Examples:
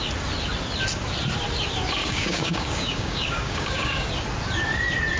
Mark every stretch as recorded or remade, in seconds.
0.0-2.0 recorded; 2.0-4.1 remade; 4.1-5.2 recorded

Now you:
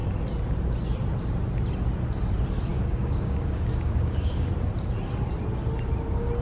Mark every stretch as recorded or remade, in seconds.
0.0-2.7 recorded; 2.7-4.5 remade; 4.5-6.4 recorded

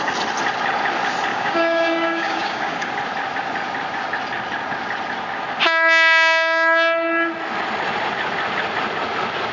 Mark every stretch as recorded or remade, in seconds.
0.0-1.3 recorded; 1.3-2.9 remade; 2.9-9.5 recorded

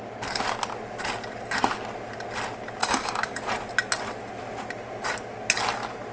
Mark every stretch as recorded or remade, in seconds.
0.0-2.8 recorded; 2.8-3.4 remade; 3.4-6.1 recorded

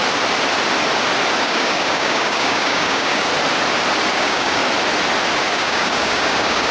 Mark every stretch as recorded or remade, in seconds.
0.0-1.4 recorded; 1.4-3.3 remade; 3.3-4.1 recorded; 4.1-4.6 remade; 4.6-5.4 recorded; 5.4-6.7 remade

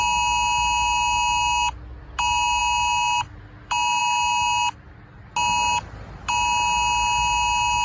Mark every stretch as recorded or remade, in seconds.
0.0-7.8 recorded

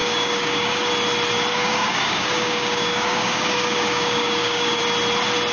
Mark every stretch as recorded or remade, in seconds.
0.0-0.9 remade; 0.9-1.5 recorded; 1.5-4.8 remade; 4.8-5.5 recorded

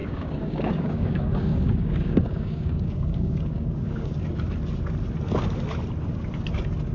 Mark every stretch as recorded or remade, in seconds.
0.0-4.1 remade; 4.1-6.9 recorded